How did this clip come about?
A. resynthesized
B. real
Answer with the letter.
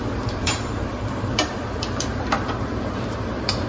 A